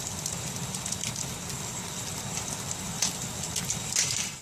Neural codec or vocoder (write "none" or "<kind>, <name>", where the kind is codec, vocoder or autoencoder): none